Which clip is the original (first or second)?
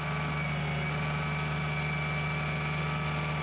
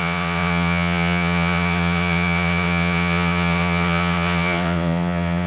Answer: first